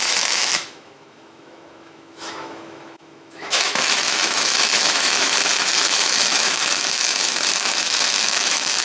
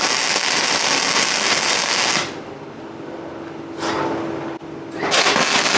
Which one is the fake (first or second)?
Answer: first